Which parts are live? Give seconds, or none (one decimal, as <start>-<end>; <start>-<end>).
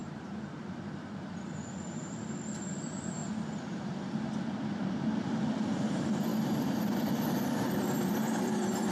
3.2-5.3; 6.3-6.8